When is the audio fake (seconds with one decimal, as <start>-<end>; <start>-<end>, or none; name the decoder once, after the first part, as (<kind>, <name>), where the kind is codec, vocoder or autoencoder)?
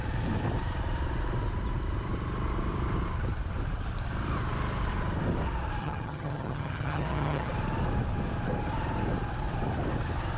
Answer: 5.8-7.5 (vocoder, HiFi-GAN)